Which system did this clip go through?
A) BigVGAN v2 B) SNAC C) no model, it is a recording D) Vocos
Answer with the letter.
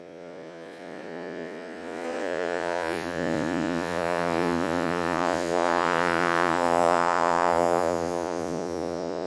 D